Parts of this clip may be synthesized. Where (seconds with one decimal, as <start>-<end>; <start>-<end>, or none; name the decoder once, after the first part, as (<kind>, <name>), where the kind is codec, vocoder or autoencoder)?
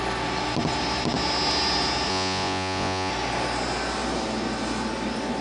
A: 2.1-3.1 (vocoder, Vocos)